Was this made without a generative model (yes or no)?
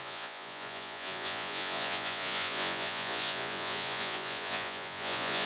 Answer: no